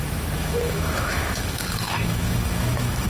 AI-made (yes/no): yes